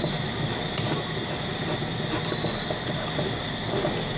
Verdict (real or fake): real